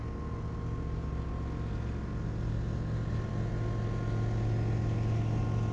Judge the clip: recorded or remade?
recorded